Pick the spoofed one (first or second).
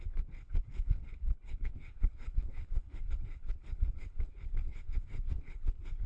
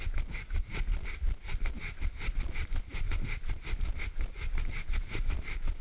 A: first